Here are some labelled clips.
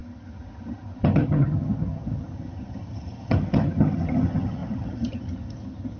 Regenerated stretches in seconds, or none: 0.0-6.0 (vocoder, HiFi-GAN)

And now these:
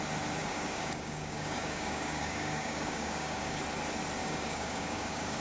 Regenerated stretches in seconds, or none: 0.4-3.6 (codec, DAC); 4.2-5.4

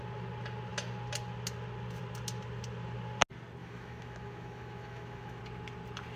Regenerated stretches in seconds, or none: 3.6-5.4 (autoencoder, DAC-VAE)

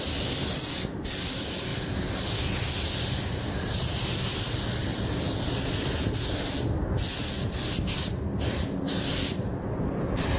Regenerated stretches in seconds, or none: none

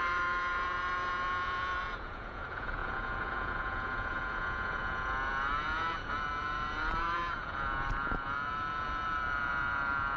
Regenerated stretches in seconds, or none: 0.0-10.2 (vocoder, Vocos)

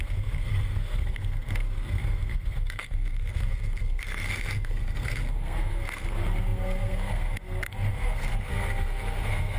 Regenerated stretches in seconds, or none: 0.0-9.6 (codec, SNAC)

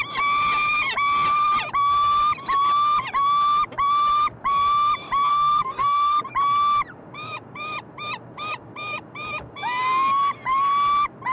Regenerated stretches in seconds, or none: 5.3-6.2 (codec, SNAC)

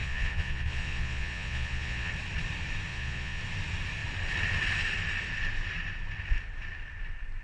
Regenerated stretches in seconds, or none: 0.0-2.1 (vocoder, Vocos); 2.9-3.4